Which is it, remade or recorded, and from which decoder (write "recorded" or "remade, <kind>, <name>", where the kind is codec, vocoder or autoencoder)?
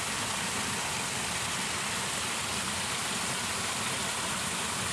recorded